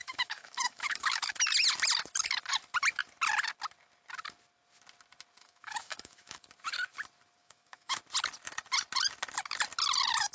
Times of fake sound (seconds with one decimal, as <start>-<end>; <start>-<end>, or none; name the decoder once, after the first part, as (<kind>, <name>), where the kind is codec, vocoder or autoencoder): 0.0-1.4 (autoencoder, DAC-VAE); 5.4-6.5; 7.4-8.0